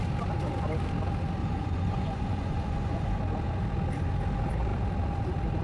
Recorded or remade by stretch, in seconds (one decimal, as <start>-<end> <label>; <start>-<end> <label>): 0.0-1.4 recorded; 1.4-3.2 remade; 3.2-5.6 recorded